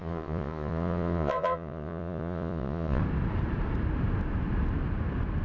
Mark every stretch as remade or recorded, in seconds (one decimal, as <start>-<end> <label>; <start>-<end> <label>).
0.0-3.0 remade; 3.0-5.4 recorded